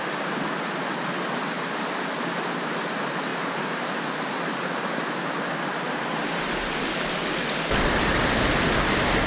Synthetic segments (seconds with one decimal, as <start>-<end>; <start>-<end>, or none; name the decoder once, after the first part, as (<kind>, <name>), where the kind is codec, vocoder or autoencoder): none